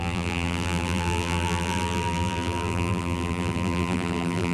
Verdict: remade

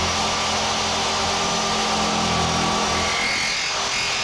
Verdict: recorded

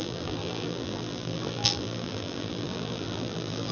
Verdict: remade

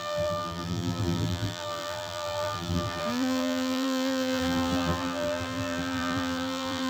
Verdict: remade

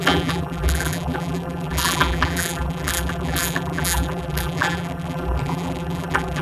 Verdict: remade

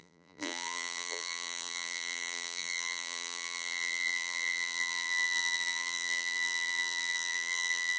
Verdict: remade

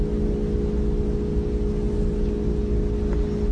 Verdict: recorded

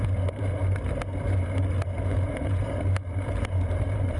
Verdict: remade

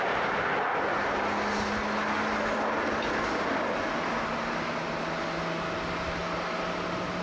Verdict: recorded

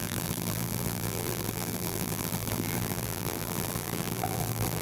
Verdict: remade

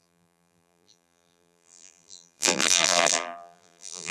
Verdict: remade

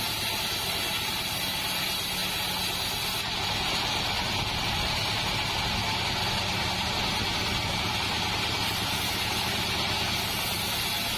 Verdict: recorded